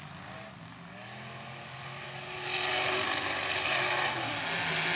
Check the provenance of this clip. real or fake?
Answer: real